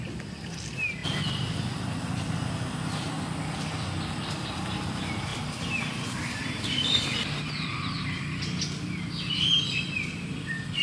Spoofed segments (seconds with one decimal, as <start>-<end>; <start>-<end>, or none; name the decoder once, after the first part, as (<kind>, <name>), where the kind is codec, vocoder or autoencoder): 5.3-8.4 (vocoder, BigVGAN v2)